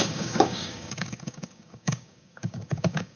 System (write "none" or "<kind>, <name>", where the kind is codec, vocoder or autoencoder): codec, DAC